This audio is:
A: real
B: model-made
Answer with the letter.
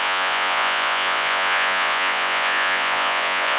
B